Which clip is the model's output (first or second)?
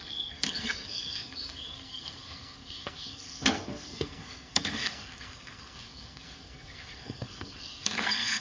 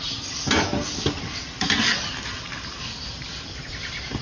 first